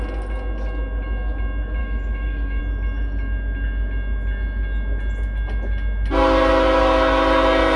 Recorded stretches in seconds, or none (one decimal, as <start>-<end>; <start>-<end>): 0.0-1.8; 2.6-7.8